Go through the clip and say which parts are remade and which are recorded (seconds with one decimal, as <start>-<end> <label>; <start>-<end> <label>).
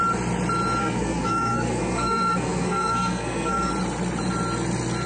0.0-0.8 recorded; 0.8-3.7 remade; 3.7-5.1 recorded